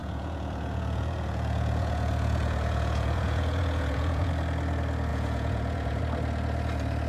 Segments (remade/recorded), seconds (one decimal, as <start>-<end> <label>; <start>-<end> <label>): 0.0-4.3 remade; 4.3-5.1 recorded; 5.1-6.0 remade; 6.0-7.1 recorded